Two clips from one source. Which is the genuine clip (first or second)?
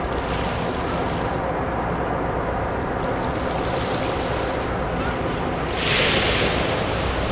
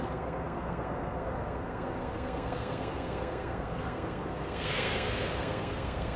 first